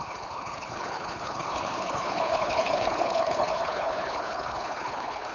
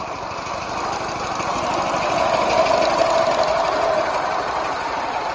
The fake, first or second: first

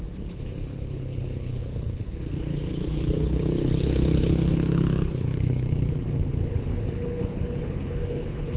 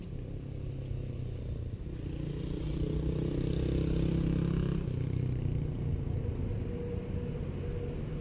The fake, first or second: first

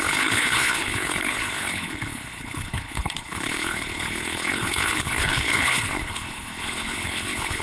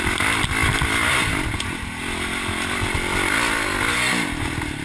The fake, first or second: first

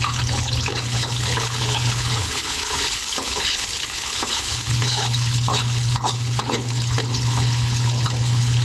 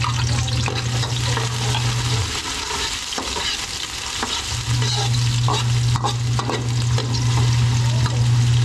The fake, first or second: first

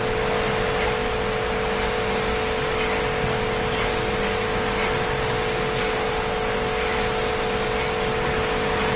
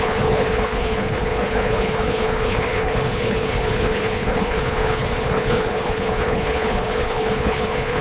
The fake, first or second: second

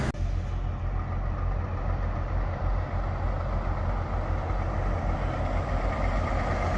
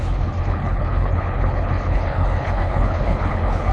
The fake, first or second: second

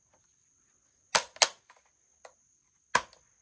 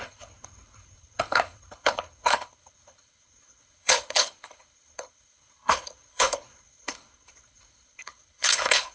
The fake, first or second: second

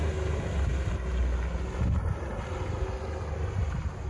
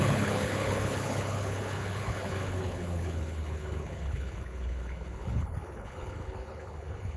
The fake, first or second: second